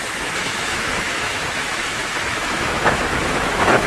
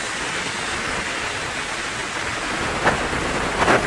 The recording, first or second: second